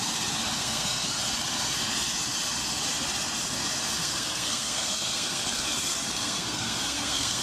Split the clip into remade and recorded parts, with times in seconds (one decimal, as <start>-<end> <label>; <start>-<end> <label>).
0.0-0.6 recorded; 0.6-1.2 remade; 1.2-4.0 recorded; 4.0-7.4 remade

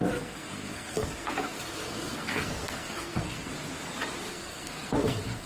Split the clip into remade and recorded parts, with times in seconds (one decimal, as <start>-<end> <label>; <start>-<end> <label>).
0.0-3.5 remade; 3.5-4.3 recorded; 4.3-5.5 remade

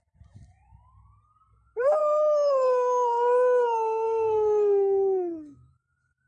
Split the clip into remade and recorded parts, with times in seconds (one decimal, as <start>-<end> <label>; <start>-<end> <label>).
0.0-2.0 recorded; 2.0-5.7 remade; 5.7-6.3 recorded

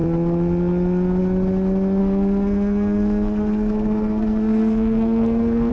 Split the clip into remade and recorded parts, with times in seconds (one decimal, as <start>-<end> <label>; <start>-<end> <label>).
0.0-2.0 recorded; 2.0-5.7 remade